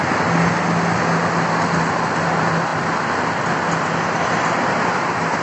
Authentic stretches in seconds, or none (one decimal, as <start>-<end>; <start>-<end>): 0.0-5.4

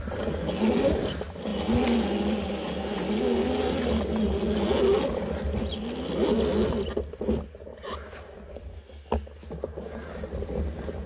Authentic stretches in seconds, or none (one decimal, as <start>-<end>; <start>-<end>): 0.0-11.1

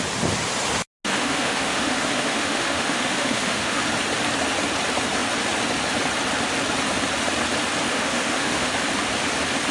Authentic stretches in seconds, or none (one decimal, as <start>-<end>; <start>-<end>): 0.0-1.1; 3.8-7.9; 8.7-9.7

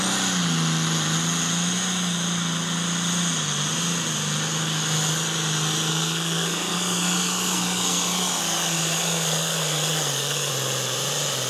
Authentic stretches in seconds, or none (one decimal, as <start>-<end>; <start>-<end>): 0.0-5.9; 10.5-11.5